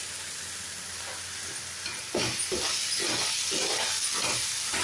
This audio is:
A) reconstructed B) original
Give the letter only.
B